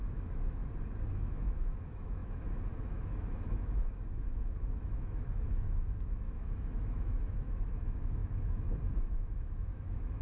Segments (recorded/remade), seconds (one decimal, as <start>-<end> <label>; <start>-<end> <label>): 0.0-0.6 remade; 0.6-1.1 recorded; 1.1-10.2 remade